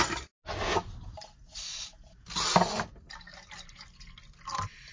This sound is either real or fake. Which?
real